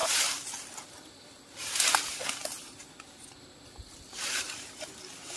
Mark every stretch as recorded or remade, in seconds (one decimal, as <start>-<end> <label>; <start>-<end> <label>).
0.0-5.4 recorded